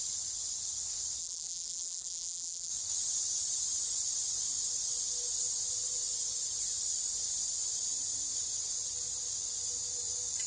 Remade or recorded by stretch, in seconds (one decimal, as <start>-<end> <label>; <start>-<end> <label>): 0.0-1.2 recorded; 1.2-2.7 remade; 2.7-10.5 recorded